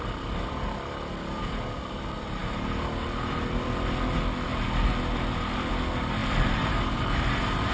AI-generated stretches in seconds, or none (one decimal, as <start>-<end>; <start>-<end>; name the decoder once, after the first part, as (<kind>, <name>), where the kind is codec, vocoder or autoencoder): 6.2-7.7 (vocoder, BigVGAN v2)